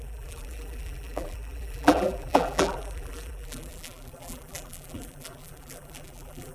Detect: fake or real fake